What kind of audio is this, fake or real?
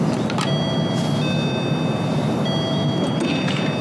real